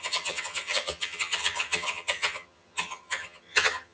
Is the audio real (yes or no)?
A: no